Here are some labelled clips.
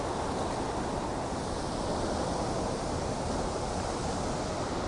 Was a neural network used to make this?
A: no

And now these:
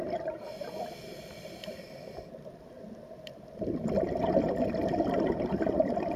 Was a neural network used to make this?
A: yes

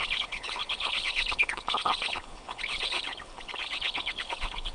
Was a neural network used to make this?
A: yes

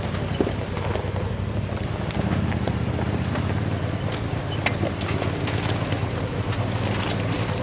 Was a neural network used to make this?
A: no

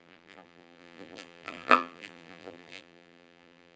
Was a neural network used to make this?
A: yes